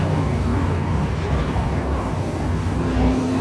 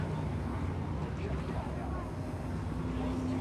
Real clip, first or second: second